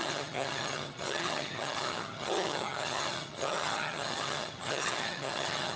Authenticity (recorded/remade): remade